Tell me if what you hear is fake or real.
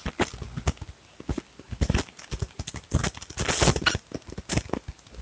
real